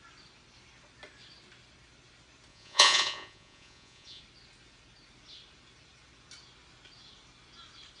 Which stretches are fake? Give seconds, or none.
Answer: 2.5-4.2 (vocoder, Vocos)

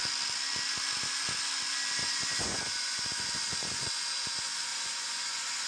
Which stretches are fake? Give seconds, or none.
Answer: 2.0-4.0 (vocoder, Vocos); 4.7-5.7

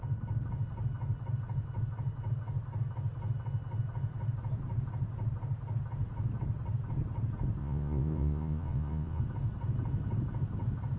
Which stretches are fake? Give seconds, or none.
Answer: 7.6-9.2 (vocoder, Vocos)

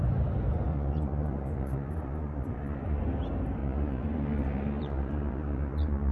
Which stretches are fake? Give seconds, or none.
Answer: 0.7-3.0 (vocoder, Vocos); 3.6-6.1